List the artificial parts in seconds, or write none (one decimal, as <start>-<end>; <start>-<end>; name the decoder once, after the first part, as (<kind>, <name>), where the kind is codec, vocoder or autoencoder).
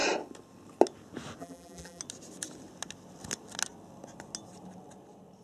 1.4-2.0 (vocoder, BigVGAN v2)